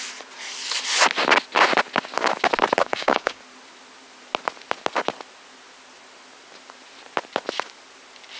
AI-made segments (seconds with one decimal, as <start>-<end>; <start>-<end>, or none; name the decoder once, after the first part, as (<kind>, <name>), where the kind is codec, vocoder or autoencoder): 2.8-3.4 (codec, DAC)